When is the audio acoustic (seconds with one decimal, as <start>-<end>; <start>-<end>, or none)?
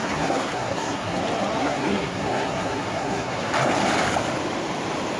1.2-1.6; 3.5-5.2